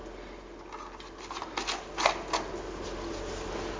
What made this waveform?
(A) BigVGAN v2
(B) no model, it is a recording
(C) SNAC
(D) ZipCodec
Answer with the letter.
B